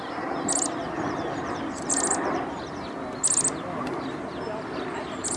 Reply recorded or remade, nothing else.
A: recorded